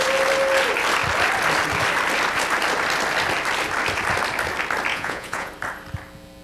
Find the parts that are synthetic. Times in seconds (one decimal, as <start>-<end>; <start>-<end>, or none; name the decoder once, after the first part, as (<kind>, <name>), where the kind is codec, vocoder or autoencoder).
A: 4.9-5.5 (vocoder, Vocos)